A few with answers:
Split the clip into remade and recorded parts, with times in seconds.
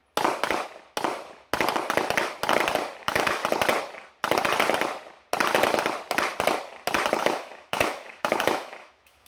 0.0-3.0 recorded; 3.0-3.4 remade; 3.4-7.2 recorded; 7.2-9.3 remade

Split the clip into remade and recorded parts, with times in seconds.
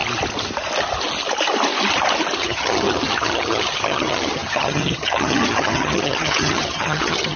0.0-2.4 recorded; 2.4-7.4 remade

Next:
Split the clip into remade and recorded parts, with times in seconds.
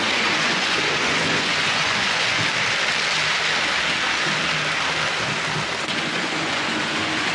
0.0-2.4 remade; 2.4-5.8 recorded; 5.8-7.3 remade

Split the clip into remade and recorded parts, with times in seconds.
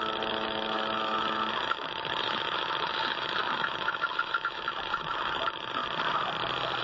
0.0-5.8 remade; 5.8-6.8 recorded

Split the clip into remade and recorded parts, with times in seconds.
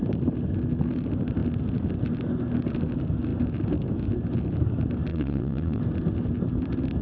0.0-5.1 recorded; 5.1-5.8 remade; 5.8-7.0 recorded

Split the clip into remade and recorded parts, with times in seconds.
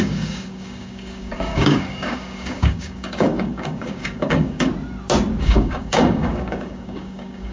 0.0-4.7 remade; 4.7-5.4 recorded; 5.4-7.5 remade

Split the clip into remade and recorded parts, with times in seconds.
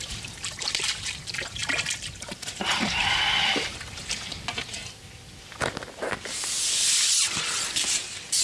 0.0-8.4 recorded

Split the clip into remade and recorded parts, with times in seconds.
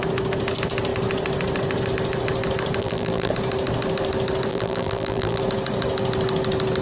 0.0-2.8 recorded; 2.8-3.3 remade; 3.3-4.5 recorded; 4.5-5.4 remade; 5.4-6.8 recorded